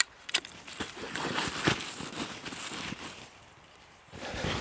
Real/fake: fake